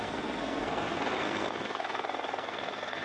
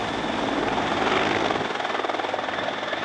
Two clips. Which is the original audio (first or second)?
second